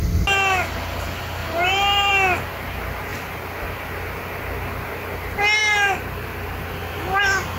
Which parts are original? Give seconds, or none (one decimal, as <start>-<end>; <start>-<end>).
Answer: 0.0-1.4; 2.1-7.6